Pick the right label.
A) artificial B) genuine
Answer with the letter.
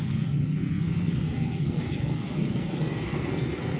A